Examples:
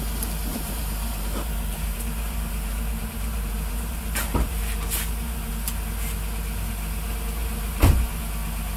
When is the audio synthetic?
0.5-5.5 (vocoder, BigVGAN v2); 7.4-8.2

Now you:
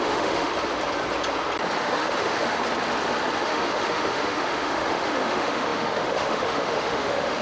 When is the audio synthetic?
0.0-0.5 (autoencoder, DAC-VAE); 1.8-2.6; 3.4-7.4

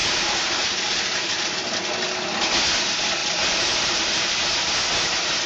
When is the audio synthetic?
0.0-1.6 (vocoder, BigVGAN v2); 3.2-4.4

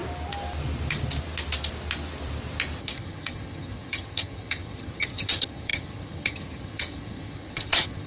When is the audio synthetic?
2.8-8.1 (vocoder, HiFi-GAN)

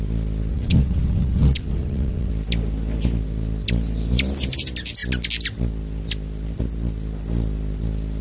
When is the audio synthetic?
0.5-2.3 (vocoder, WaveNeXt)